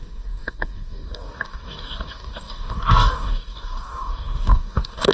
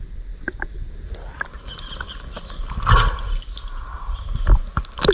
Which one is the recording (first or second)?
second